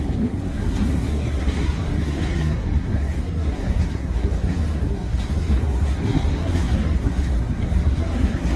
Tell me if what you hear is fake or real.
fake